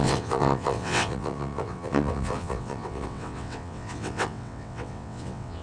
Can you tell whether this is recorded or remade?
remade